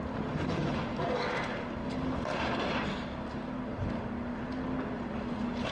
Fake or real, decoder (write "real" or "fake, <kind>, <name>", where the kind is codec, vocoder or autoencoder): real